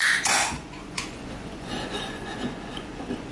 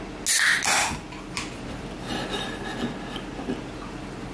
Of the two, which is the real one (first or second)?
second